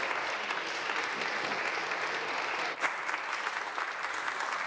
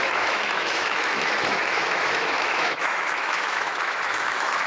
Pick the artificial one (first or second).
second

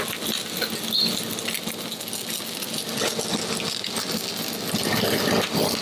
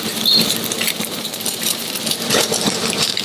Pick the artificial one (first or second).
second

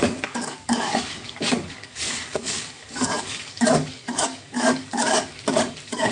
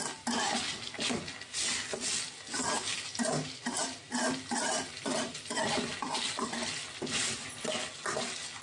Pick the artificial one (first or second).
first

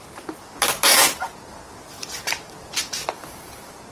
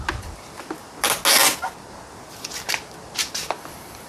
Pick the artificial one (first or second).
first